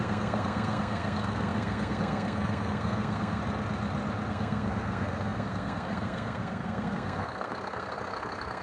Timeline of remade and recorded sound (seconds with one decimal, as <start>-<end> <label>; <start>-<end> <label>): 0.0-3.4 remade; 3.4-4.3 recorded; 4.3-8.6 remade